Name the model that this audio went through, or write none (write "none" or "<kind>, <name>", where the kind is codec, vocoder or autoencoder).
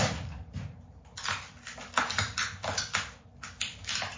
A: none